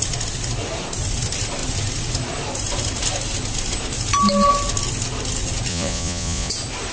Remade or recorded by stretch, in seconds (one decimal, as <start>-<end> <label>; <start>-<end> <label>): 0.0-5.7 recorded; 5.7-6.5 remade; 6.5-6.9 recorded